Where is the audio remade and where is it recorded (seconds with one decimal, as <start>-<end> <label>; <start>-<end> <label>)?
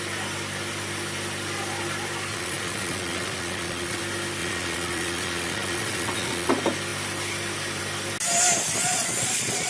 0.0-2.3 recorded; 2.3-4.0 remade; 4.0-4.4 recorded; 4.4-6.5 remade; 6.5-8.8 recorded; 8.8-9.7 remade